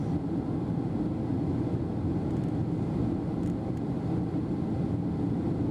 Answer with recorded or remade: recorded